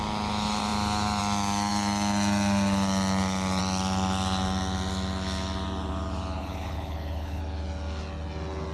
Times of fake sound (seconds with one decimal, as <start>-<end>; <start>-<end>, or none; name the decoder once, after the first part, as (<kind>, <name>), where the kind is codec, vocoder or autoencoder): 6.4-7.4 (codec, HILCodec)